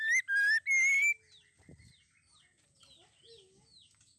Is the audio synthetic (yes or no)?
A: no